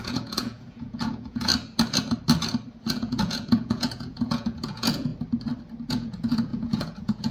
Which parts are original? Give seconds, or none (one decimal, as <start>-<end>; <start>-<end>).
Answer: 1.5-2.9; 5.1-5.9